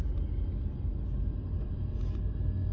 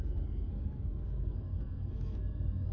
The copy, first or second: second